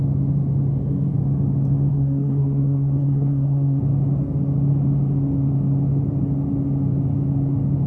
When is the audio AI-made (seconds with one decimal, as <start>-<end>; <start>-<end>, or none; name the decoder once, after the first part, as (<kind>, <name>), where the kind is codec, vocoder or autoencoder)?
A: 1.9-3.8 (codec, SNAC)